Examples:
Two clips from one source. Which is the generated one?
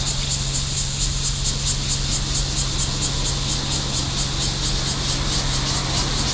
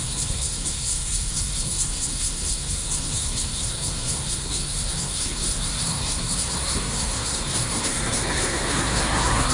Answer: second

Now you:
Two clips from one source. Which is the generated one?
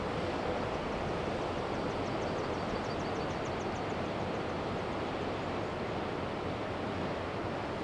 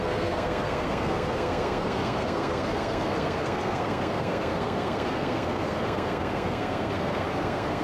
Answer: second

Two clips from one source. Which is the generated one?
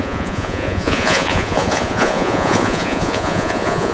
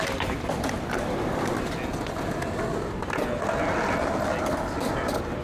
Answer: first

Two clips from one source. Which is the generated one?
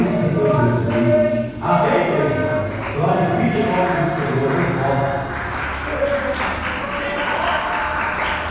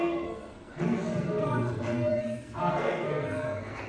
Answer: second